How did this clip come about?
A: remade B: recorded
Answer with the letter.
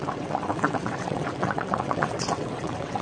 A